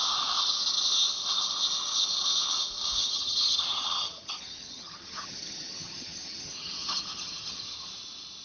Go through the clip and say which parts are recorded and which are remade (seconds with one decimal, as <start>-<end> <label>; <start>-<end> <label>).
0.0-3.0 recorded; 3.0-7.9 remade; 7.9-8.4 recorded